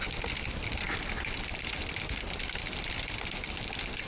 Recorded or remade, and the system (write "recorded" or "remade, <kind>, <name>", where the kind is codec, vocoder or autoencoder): recorded